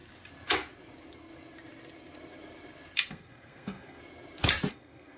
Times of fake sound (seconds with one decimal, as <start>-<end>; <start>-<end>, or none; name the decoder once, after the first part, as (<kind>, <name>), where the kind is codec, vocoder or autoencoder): 3.1-4.0 (codec, SNAC); 4.7-5.2